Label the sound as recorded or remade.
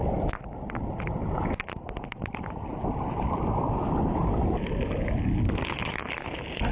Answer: recorded